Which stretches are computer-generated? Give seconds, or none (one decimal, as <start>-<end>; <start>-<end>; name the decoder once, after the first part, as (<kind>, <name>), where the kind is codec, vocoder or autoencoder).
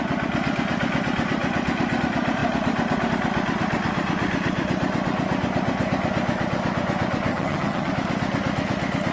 7.3-7.9 (vocoder, HiFi-GAN)